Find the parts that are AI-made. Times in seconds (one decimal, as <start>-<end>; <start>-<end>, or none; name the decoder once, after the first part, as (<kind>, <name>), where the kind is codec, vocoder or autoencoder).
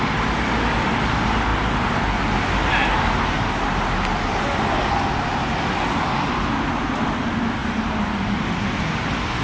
7.6-8.3 (vocoder, BigVGAN v2)